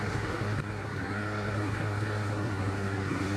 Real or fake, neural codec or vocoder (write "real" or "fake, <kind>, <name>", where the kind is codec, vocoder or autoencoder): fake, codec, SNAC